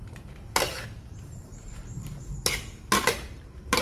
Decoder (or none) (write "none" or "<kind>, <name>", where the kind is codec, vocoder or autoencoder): vocoder, BigVGAN v2